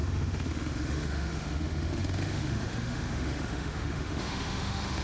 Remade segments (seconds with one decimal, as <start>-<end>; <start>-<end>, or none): 0.0-5.0